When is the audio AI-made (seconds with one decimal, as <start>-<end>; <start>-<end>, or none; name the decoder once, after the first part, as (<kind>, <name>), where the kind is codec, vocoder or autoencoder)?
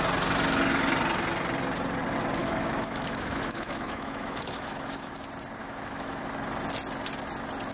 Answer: 2.4-5.1 (autoencoder, DAC-VAE); 5.6-6.2